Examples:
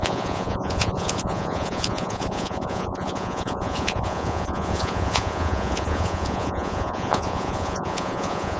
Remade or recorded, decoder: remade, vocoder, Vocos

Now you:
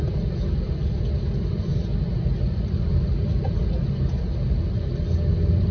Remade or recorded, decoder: recorded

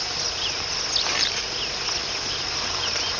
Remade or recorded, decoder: recorded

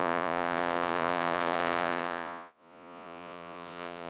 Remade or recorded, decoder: remade, vocoder, Vocos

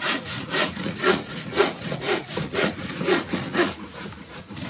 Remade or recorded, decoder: remade, vocoder, Vocos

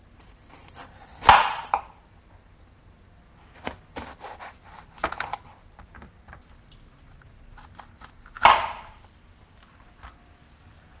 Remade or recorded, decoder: recorded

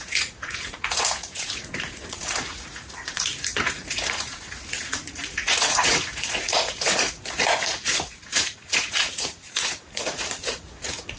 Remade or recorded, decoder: remade, vocoder, Vocos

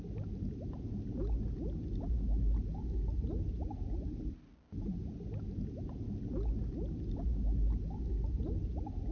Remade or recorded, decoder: recorded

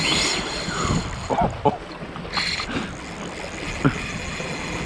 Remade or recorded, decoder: recorded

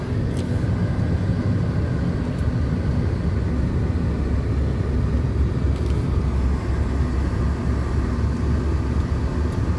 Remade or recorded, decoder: recorded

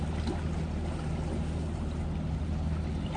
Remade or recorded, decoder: recorded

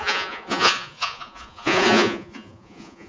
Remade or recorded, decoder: remade, vocoder, Vocos